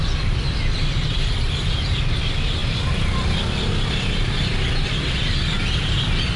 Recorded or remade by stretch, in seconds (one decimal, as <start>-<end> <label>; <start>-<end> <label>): 0.0-6.4 recorded